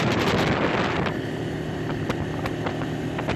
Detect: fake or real real